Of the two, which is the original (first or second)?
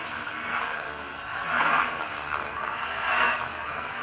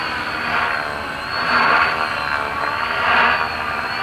second